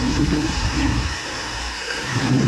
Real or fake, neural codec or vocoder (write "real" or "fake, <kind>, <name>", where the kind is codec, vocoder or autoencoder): fake, codec, SNAC